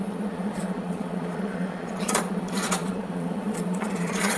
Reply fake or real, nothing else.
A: fake